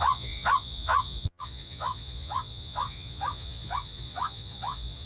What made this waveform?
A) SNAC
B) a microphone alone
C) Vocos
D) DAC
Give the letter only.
C